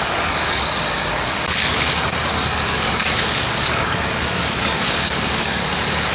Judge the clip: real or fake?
fake